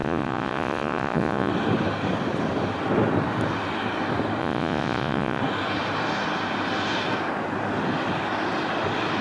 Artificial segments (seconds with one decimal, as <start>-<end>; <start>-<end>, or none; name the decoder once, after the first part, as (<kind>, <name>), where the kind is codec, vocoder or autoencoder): 0.0-1.5 (vocoder, Vocos); 4.4-5.4